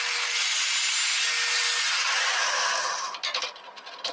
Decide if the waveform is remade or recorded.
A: recorded